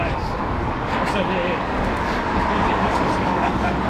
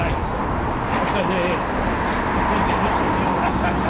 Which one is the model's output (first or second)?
first